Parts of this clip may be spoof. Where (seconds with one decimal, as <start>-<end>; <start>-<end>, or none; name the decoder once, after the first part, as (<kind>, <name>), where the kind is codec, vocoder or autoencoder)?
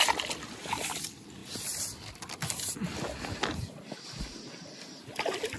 none